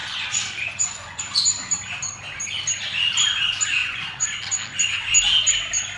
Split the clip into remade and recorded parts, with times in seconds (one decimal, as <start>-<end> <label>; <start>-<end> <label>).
0.0-1.2 remade; 1.2-3.8 recorded; 3.8-4.4 remade; 4.4-6.0 recorded